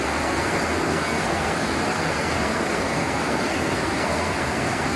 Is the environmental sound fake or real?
fake